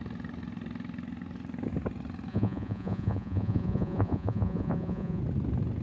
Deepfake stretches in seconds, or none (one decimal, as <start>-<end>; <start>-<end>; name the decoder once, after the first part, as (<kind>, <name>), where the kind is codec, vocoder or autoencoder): 2.3-5.2 (vocoder, Vocos)